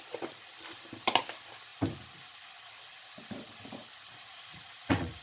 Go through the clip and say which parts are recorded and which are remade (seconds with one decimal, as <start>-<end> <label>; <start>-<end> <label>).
0.0-4.3 recorded; 4.3-5.2 remade